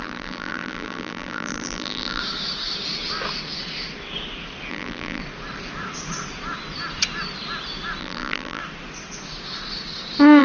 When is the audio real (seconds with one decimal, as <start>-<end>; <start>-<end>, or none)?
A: 2.2-4.7; 5.2-8.0; 8.6-10.4